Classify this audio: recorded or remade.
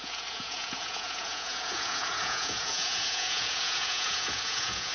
remade